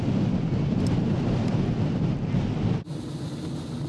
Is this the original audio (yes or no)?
yes